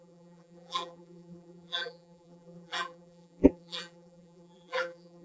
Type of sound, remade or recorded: remade